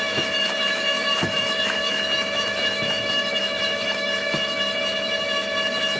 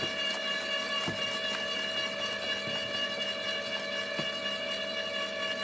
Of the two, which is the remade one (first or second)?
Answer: first